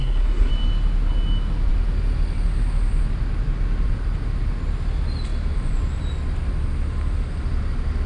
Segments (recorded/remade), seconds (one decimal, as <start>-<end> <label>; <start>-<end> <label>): 0.0-0.5 remade; 0.5-8.1 recorded